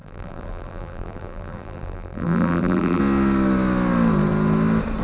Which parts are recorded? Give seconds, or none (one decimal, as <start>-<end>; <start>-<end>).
3.0-5.0